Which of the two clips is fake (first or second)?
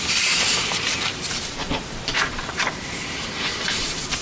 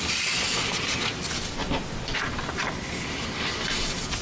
first